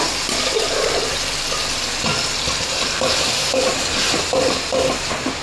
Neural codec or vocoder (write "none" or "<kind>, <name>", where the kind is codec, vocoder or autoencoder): none